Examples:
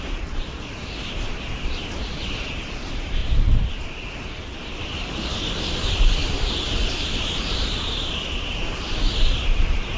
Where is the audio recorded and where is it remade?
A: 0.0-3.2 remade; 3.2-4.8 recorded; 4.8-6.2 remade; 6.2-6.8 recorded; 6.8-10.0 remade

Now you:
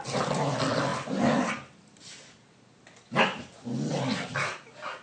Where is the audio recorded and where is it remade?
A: 0.0-0.9 recorded; 0.9-2.8 remade; 2.8-5.0 recorded

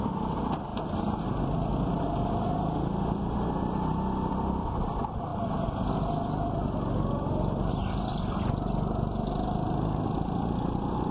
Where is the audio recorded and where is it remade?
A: 0.0-11.1 recorded

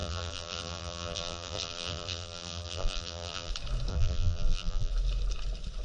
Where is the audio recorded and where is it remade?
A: 0.0-3.5 remade; 3.5-3.9 recorded; 3.9-4.9 remade; 4.9-5.8 recorded

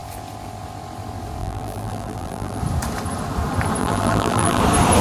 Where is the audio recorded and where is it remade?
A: 0.0-1.4 recorded; 1.4-2.6 remade; 2.6-3.8 recorded; 3.8-4.6 remade; 4.6-5.0 recorded

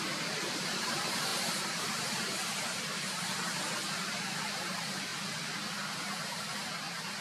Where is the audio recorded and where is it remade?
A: 0.0-5.1 remade; 5.1-6.0 recorded; 6.0-7.2 remade